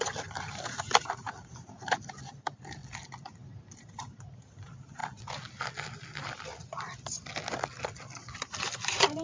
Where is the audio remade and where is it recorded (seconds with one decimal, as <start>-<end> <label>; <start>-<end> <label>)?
0.0-2.8 remade; 2.8-3.7 recorded; 3.7-5.0 remade; 5.0-8.4 recorded; 8.4-9.2 remade